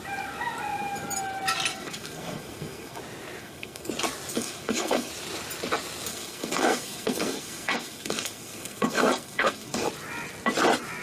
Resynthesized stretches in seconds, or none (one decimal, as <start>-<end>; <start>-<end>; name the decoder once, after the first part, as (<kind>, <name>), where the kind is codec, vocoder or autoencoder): 1.7-3.0 (codec, SNAC); 3.4-3.9; 4.3-5.1; 6.1-9.9